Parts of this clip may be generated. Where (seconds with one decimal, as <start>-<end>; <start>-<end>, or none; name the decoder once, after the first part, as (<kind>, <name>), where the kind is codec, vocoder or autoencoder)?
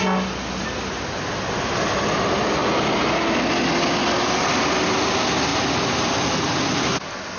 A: none